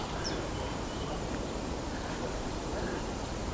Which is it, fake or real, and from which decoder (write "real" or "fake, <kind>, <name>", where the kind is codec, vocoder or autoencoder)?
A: fake, vocoder, BigVGAN v2